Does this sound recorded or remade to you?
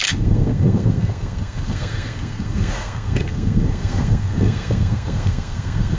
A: remade